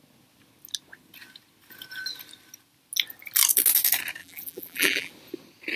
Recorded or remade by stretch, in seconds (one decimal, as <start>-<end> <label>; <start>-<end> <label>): 0.0-4.2 recorded; 4.2-5.1 remade; 5.1-5.8 recorded